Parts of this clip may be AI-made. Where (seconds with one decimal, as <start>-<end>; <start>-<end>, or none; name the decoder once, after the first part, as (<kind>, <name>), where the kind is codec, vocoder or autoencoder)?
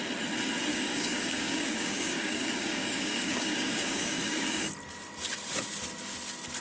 0.7-4.7 (codec, DAC)